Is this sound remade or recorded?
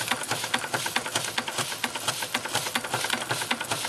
recorded